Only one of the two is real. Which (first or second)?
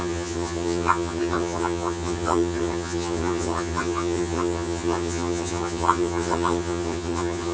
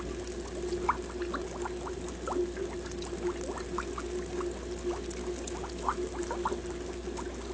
second